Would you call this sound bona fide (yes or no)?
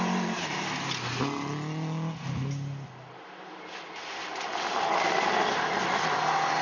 yes